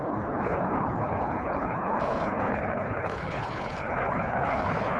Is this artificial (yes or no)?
yes